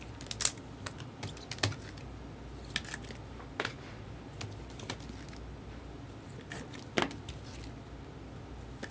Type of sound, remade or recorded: recorded